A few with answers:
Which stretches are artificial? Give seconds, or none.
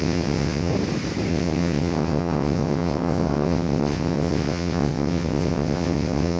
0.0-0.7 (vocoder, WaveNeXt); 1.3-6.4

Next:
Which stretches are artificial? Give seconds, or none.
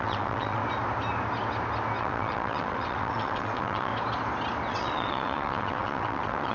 0.0-0.6 (vocoder, WaveNeXt); 2.0-3.9; 4.7-6.5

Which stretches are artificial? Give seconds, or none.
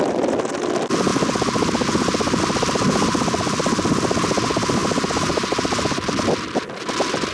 none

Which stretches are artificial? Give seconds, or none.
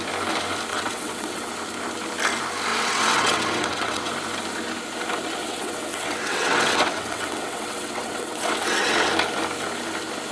0.7-1.5 (vocoder, WaveNeXt); 2.7-4.1; 5.4-9.1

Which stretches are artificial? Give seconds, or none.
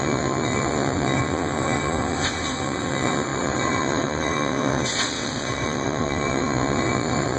0.0-7.4 (vocoder, WaveNeXt)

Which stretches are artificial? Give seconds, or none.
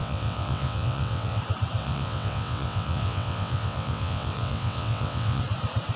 0.0-1.4 (vocoder, WaveNeXt); 1.8-5.4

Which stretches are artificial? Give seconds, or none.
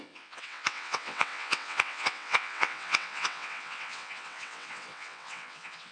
0.0-5.9 (vocoder, WaveNeXt)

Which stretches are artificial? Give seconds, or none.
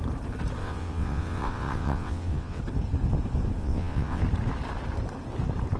0.6-2.6 (vocoder, WaveNeXt); 3.6-4.2